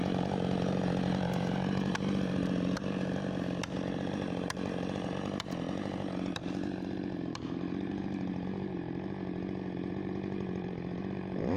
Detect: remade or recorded remade